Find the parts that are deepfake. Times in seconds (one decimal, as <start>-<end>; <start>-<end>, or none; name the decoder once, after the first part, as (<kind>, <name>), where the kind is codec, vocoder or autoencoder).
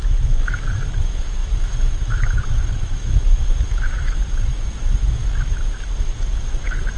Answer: 0.0-7.0 (autoencoder, DAC-VAE)